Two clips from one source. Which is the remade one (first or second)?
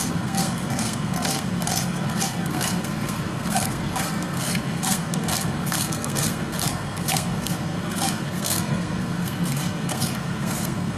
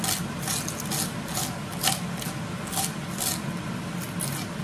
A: first